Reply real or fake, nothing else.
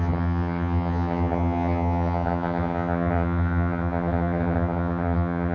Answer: fake